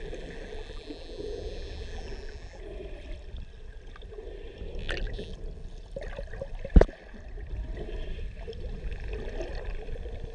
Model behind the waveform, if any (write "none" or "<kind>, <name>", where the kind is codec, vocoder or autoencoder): none